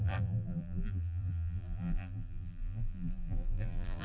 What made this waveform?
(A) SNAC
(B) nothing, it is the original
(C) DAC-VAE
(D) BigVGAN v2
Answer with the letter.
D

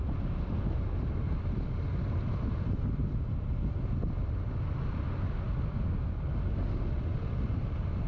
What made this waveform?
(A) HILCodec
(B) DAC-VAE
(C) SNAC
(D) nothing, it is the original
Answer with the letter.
D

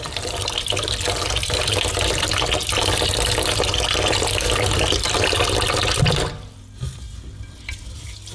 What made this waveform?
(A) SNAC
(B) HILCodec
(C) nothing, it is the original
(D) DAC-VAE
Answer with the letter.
C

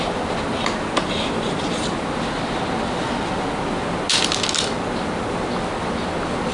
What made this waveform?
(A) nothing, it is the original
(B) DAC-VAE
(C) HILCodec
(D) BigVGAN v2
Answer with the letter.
A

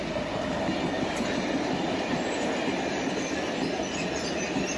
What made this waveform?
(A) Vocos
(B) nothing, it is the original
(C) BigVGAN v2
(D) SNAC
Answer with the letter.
B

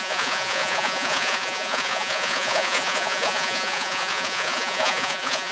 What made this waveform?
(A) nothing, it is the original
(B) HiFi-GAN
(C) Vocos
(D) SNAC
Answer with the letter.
C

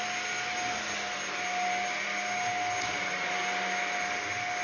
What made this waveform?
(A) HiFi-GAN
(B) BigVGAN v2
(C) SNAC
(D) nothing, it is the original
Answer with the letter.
D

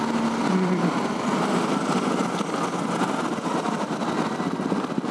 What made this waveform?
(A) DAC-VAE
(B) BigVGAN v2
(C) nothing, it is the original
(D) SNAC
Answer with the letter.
C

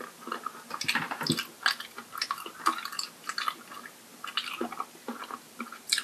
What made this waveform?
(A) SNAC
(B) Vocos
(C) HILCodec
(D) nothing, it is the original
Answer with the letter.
D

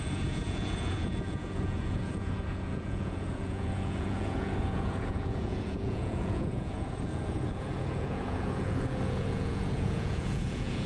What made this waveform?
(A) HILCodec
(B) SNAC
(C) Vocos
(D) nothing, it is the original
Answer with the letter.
C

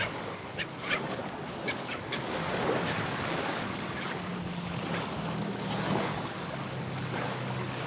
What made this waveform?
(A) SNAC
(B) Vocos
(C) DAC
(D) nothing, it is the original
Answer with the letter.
C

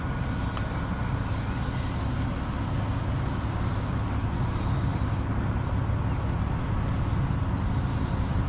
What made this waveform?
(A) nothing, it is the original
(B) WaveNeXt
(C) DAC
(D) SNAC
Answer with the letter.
A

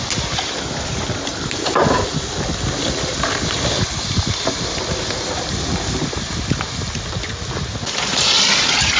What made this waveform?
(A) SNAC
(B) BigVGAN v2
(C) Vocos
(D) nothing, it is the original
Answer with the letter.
D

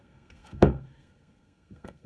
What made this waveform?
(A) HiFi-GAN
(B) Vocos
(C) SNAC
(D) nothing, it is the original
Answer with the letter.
C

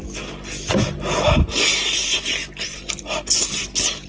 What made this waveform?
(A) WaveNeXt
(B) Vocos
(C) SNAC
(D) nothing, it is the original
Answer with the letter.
D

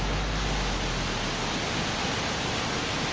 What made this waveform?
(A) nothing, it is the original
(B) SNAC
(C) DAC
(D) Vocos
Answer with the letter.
A